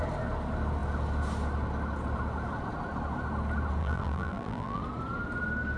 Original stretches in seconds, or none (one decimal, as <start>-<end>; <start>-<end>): 0.0-3.8; 4.8-5.8